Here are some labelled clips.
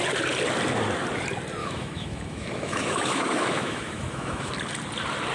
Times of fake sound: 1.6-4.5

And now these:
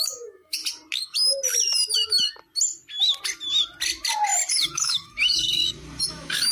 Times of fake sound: 0.0-0.6; 4.5-5.6; 6.1-6.5

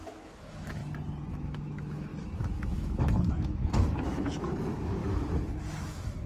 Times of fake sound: 0.0-0.8; 1.3-6.3

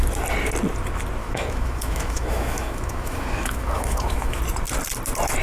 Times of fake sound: 1.2-4.4

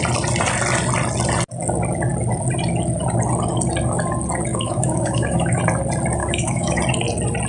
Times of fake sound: 4.5-5.6; 6.2-6.8

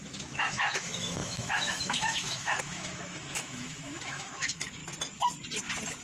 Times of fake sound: 0.0-4.8

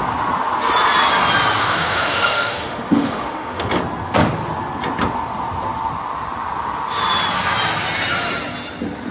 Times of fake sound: 1.6-3.7

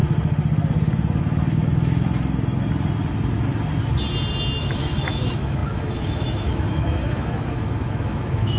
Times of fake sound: 4.6-8.6